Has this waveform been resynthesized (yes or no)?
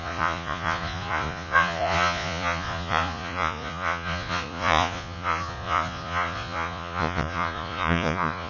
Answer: yes